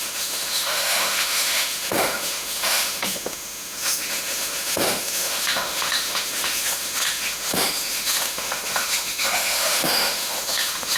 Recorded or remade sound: remade